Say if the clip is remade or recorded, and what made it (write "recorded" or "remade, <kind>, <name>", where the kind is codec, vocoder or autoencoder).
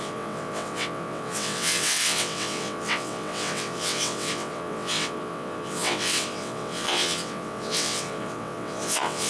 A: remade, vocoder, WaveNeXt